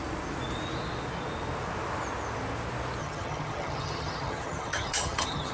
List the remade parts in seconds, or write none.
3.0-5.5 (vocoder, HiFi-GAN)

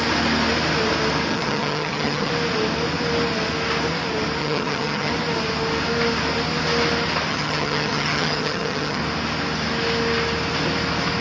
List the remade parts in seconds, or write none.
1.3-2.3 (vocoder, HiFi-GAN); 4.4-5.1; 7.3-9.0